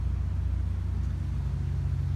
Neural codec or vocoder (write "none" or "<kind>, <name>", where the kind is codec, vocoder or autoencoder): none